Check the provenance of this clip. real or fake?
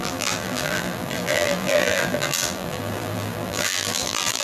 fake